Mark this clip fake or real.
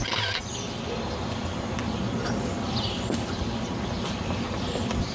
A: real